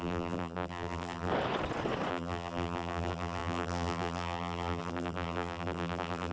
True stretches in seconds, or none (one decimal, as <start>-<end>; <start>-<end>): 1.3-2.1